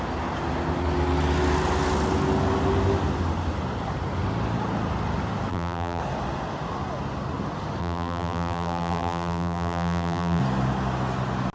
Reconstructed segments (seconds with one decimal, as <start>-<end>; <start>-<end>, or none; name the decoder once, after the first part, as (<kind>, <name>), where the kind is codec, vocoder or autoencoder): 5.5-6.0 (vocoder, BigVGAN v2); 7.8-10.4